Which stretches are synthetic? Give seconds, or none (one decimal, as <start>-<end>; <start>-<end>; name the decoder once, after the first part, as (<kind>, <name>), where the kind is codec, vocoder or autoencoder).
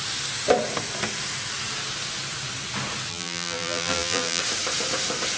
3.1-4.4 (vocoder, BigVGAN v2)